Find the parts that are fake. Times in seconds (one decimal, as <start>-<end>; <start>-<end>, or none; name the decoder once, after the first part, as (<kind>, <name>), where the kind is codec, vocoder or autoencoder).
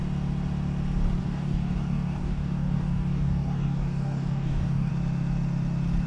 1.2-4.9 (codec, DAC)